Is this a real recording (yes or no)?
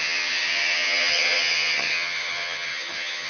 no